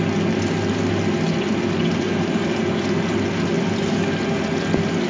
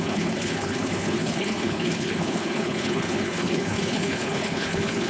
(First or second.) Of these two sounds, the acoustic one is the first